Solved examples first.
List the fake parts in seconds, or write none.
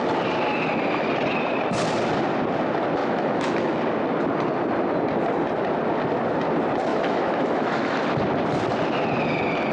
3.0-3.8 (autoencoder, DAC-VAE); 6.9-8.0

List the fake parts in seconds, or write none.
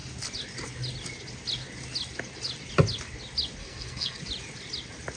3.6-4.2 (codec, SNAC)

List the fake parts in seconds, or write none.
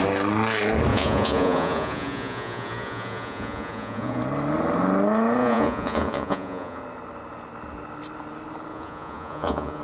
0.9-4.2 (vocoder, Vocos); 5.4-6.8; 8.7-9.8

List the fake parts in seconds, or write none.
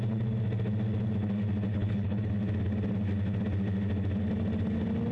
1.7-2.3 (codec, HILCodec)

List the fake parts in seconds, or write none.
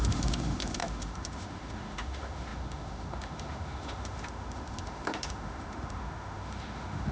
0.0-7.1 (autoencoder, DAC-VAE)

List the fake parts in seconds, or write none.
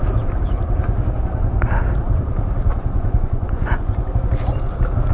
2.7-4.1 (vocoder, Vocos)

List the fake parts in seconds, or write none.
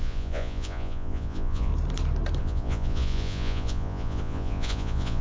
0.0-1.7 (vocoder, Vocos); 2.4-5.2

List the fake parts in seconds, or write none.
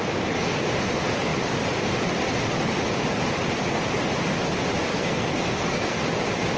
4.9-6.0 (codec, SNAC)